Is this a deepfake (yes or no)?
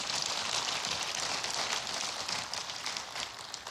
no